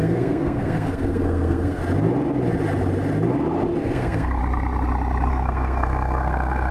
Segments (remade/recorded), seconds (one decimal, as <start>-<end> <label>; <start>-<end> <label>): 0.0-1.8 remade; 1.8-3.8 recorded; 3.8-4.4 remade; 4.4-5.3 recorded; 5.3-6.7 remade